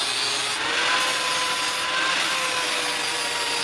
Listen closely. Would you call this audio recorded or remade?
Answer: recorded